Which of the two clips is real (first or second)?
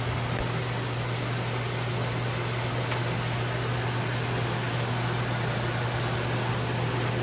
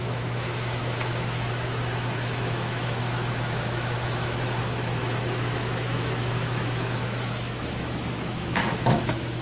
first